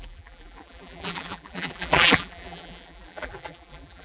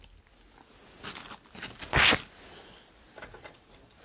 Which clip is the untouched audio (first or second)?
second